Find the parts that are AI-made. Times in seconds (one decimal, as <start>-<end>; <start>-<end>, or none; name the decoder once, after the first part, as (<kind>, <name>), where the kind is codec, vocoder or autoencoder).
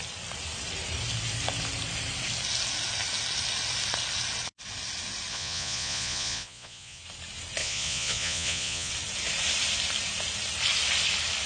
5.3-7.0 (vocoder, Vocos); 7.6-8.9